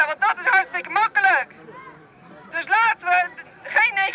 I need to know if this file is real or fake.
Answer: real